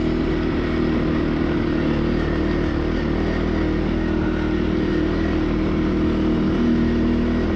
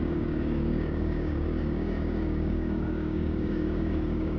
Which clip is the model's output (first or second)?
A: second